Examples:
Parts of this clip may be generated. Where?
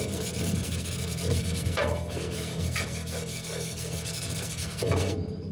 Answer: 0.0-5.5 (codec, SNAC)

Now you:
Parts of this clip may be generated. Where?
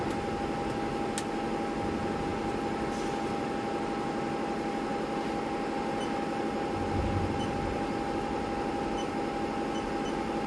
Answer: none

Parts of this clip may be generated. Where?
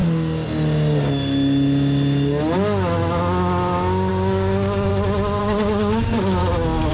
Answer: 4.1-4.9 (codec, DAC); 5.4-6.4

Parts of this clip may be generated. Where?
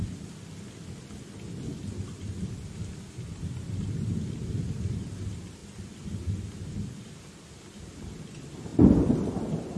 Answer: none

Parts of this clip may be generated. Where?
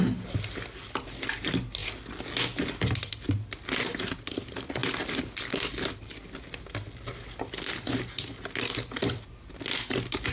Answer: none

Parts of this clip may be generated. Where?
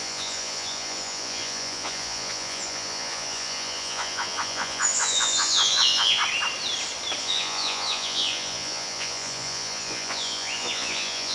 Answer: 0.0-6.2 (vocoder, Vocos); 7.2-11.3